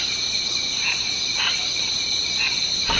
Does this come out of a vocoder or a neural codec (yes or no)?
no